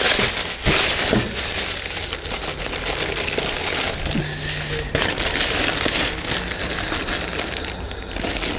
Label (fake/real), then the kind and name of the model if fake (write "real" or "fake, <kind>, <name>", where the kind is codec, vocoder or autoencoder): real